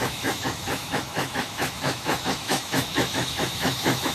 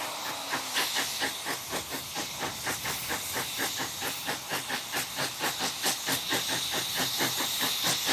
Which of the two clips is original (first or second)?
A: second